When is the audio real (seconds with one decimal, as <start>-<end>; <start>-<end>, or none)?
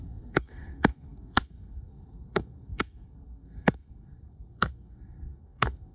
none